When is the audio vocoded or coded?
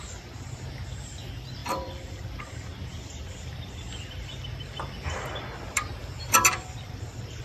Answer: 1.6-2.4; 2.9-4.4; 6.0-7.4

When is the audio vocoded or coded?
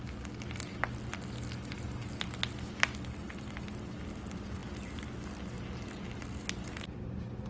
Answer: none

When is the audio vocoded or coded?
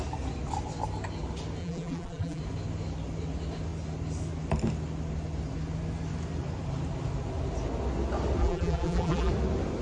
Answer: 1.6-2.4; 8.4-9.3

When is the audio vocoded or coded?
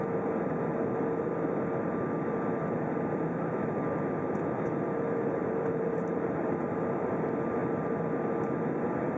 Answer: 5.4-6.7